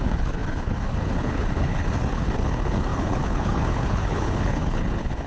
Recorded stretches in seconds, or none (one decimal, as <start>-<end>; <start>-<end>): none